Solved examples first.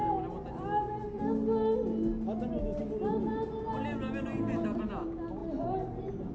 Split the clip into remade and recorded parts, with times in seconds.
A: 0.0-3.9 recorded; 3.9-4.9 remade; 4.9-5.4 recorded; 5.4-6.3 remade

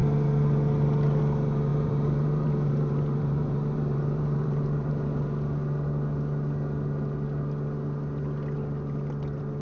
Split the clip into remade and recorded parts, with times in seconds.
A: 0.0-1.7 recorded; 1.7-4.9 remade; 4.9-9.6 recorded

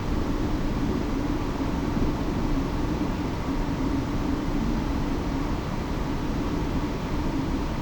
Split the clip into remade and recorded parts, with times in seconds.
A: 0.0-7.8 recorded